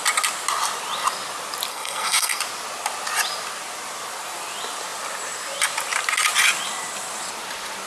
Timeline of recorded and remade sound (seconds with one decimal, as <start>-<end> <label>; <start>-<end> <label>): 0.0-1.7 recorded; 1.7-2.4 remade; 2.4-7.9 recorded